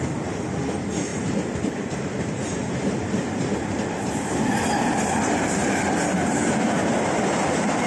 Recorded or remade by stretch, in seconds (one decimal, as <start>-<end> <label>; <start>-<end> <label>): 0.0-1.1 recorded; 1.1-5.8 remade; 5.8-6.8 recorded; 6.8-7.9 remade